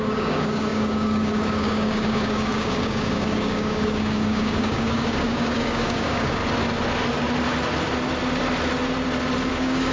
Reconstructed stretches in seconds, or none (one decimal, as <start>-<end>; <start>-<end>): 0.0-6.4; 9.5-9.9